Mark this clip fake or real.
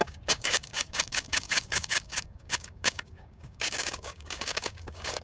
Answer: fake